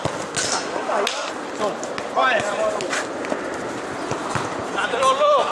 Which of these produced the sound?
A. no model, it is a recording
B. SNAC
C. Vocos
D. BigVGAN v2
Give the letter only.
A